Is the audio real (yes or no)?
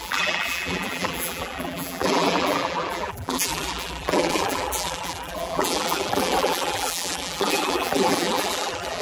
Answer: no